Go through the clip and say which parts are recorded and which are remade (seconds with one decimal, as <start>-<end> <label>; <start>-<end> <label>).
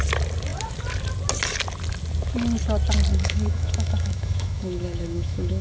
0.0-3.1 recorded; 3.1-5.6 remade